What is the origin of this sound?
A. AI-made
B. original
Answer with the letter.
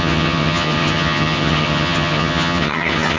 A